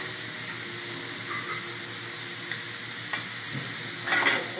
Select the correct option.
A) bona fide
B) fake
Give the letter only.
A